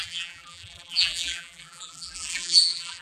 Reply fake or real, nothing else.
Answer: fake